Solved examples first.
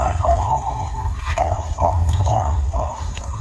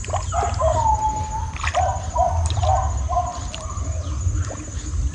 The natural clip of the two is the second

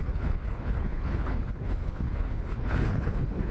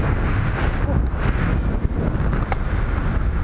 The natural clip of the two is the second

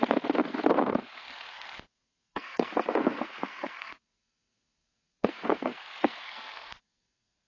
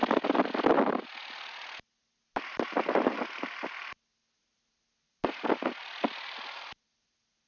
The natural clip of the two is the second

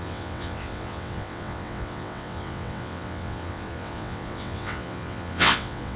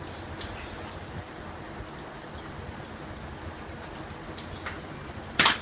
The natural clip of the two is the second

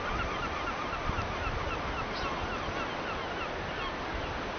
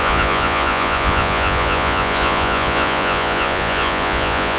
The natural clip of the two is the first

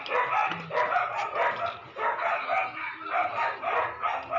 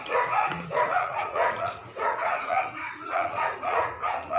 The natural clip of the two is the first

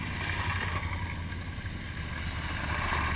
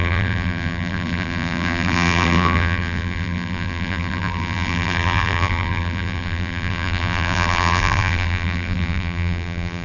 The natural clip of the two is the first